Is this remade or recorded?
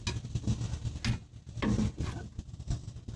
recorded